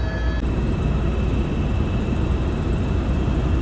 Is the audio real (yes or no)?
yes